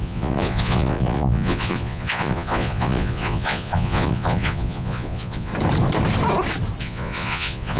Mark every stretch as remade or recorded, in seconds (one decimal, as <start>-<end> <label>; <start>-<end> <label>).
0.0-5.5 remade; 5.5-6.8 recorded; 6.8-7.8 remade